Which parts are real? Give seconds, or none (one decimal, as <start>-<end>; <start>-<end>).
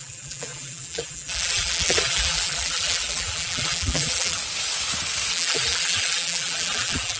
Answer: 4.4-5.3